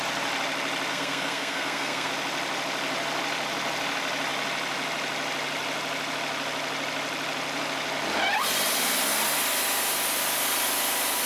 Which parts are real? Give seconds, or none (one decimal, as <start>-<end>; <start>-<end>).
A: 0.0-0.9; 2.1-11.3